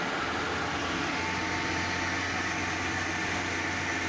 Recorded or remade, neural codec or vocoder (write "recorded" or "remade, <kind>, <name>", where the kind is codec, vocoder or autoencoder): recorded